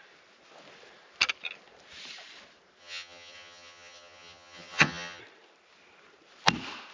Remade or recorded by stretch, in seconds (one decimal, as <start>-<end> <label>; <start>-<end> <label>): 0.0-2.8 recorded; 2.8-5.2 remade; 5.2-6.9 recorded